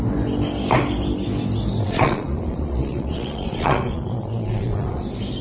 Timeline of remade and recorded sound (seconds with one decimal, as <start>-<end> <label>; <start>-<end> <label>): 0.0-1.8 recorded; 1.8-5.0 remade; 5.0-5.4 recorded

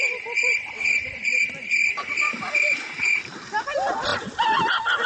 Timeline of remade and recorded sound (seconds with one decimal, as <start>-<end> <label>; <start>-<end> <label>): 0.0-5.1 recorded

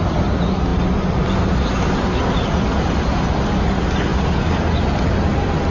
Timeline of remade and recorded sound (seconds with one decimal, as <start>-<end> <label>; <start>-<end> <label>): 0.0-5.7 recorded

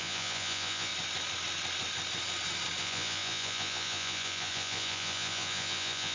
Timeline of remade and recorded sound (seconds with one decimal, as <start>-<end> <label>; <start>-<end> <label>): 0.0-0.9 remade; 0.9-2.8 recorded; 2.8-6.1 remade

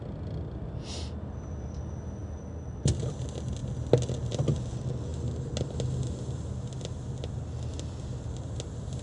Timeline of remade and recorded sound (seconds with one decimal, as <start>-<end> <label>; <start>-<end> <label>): 0.0-9.0 recorded